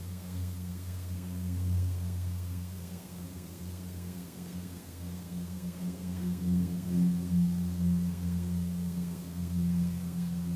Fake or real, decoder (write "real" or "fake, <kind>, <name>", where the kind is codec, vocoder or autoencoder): fake, codec, SNAC